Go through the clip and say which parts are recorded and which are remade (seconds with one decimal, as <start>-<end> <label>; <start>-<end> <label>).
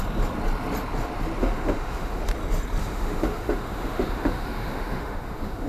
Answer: 0.0-1.4 recorded; 1.4-2.3 remade; 2.3-2.8 recorded; 2.8-5.7 remade